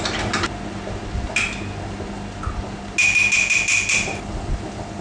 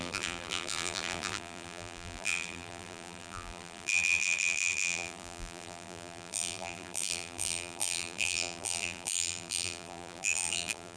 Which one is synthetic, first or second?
second